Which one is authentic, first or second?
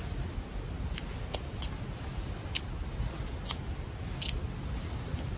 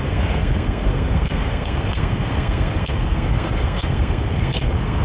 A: first